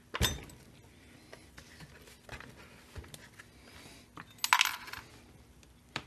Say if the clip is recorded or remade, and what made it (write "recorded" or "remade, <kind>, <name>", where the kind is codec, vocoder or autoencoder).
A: recorded